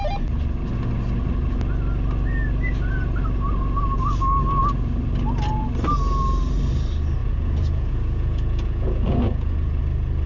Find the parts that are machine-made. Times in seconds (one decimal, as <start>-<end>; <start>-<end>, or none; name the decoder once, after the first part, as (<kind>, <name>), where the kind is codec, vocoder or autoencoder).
7.2-9.8 (vocoder, Vocos)